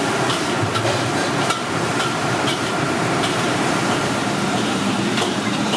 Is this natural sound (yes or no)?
no